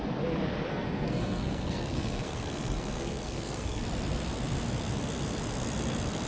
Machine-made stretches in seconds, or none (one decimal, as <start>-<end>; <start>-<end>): 0.7-3.8